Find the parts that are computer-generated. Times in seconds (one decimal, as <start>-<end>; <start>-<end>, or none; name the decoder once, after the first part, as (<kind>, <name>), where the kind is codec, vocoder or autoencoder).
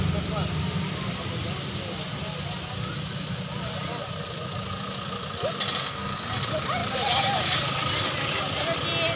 5.8-6.3 (codec, SNAC)